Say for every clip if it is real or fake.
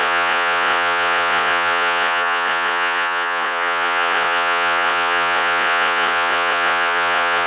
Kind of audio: fake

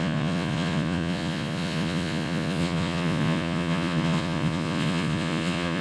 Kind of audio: fake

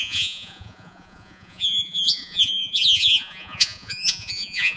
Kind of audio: fake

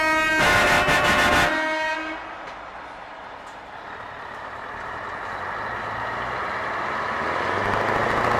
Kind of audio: real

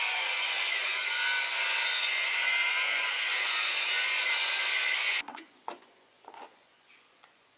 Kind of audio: fake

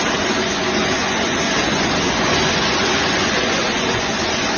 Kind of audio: fake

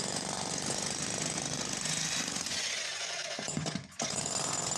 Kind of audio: fake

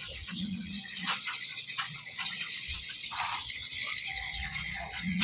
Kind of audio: fake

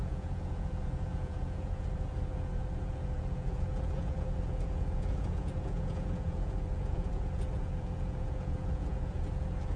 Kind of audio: fake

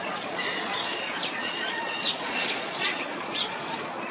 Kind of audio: fake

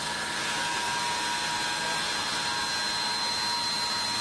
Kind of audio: real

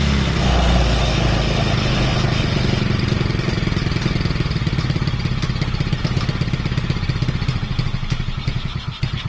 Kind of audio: real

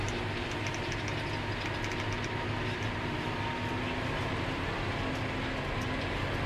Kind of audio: real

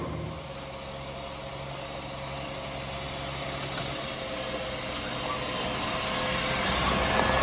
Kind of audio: real